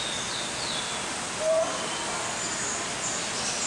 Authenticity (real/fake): real